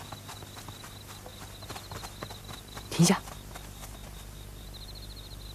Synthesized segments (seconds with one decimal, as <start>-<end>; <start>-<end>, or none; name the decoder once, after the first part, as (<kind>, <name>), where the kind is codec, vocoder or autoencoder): none